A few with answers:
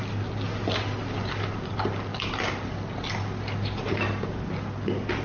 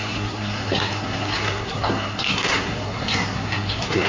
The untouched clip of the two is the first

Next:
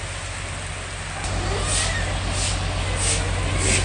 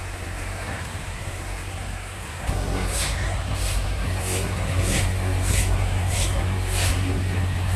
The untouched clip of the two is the first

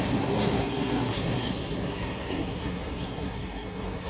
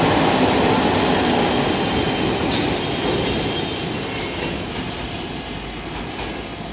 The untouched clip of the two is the second